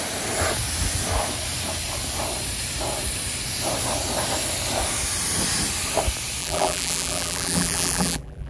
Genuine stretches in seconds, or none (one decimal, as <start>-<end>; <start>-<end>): 0.0-6.4